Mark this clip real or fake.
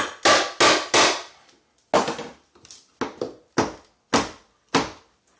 real